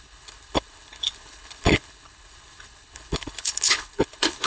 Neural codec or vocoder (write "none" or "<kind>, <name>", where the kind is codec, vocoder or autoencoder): codec, HILCodec